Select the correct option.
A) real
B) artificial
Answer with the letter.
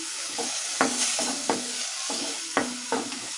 B